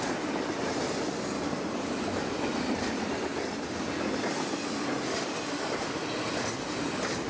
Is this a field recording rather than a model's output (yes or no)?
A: no